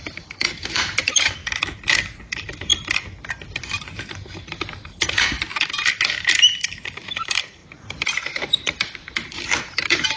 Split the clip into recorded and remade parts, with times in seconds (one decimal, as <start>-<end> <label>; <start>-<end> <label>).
0.0-1.4 remade; 1.4-2.0 recorded; 2.0-2.7 remade; 2.7-3.6 recorded; 3.6-5.5 remade; 5.5-7.1 recorded; 7.1-10.2 remade